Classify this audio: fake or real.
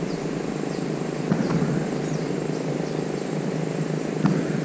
real